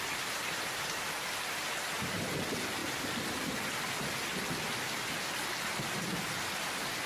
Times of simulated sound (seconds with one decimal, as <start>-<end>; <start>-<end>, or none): 2.8-3.9